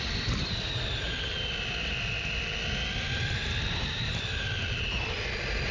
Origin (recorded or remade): recorded